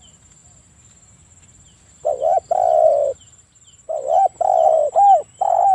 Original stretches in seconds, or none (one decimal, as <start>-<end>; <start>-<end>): 0.0-5.7